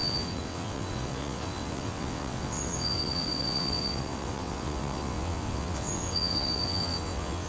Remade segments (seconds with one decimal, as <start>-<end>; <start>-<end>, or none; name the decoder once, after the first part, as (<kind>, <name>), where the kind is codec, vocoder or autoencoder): 0.0-7.5 (vocoder, WaveNeXt)